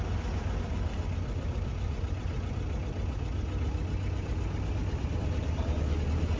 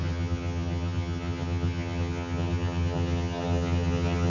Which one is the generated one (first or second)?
second